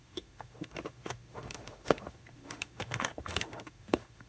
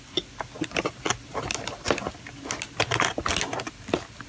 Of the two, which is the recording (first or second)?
second